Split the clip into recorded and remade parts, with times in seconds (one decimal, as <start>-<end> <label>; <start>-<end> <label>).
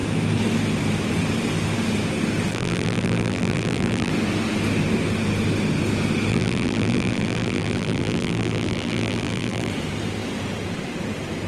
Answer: 0.0-2.5 recorded; 2.5-4.1 remade; 4.1-6.3 recorded; 6.3-9.7 remade; 9.7-11.5 recorded